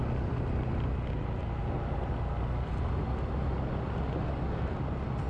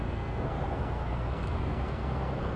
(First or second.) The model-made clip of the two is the second